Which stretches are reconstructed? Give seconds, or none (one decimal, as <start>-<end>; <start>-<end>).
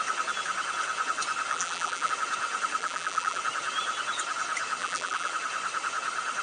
1.5-2.1; 2.8-3.4; 4.8-5.3